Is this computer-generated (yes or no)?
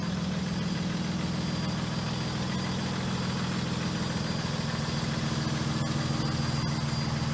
no